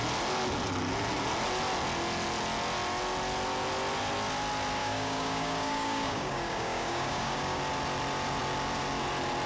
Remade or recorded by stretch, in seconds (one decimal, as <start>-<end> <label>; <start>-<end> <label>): 0.0-4.8 recorded; 4.8-7.6 remade; 7.6-9.5 recorded